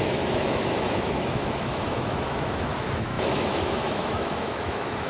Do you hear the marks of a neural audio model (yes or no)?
yes